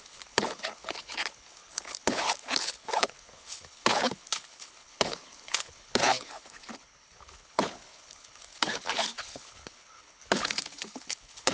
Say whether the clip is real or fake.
fake